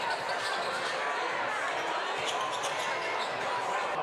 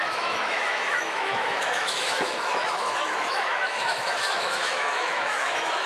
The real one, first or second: first